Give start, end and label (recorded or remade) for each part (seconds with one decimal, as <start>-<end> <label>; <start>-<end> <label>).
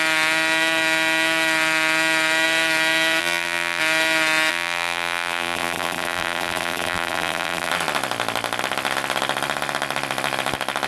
0.0-3.2 recorded; 3.2-3.8 remade; 3.8-4.5 recorded; 4.5-7.7 remade; 7.7-10.9 recorded